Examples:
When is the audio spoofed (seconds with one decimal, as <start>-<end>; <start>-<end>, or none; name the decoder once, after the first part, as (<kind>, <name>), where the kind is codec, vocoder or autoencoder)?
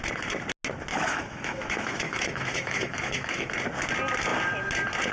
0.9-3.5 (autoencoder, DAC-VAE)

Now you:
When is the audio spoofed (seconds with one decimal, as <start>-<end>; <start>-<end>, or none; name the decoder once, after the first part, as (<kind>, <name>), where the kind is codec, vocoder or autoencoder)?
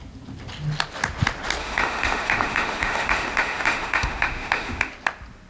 1.6-4.9 (autoencoder, DAC-VAE)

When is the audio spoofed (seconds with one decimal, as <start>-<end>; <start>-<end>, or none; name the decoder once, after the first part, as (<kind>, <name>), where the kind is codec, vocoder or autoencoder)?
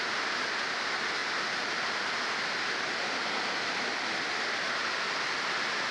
none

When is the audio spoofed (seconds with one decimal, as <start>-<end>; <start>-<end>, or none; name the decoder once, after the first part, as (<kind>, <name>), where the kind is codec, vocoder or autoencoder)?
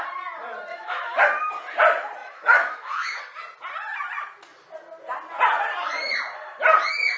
0.7-1.2 (autoencoder, DAC-VAE); 2.2-3.2